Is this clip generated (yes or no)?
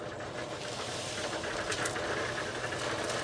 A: no